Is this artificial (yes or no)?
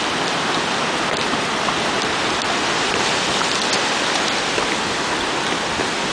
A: no